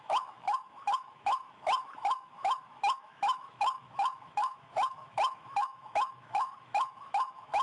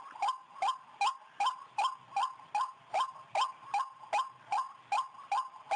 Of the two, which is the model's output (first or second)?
first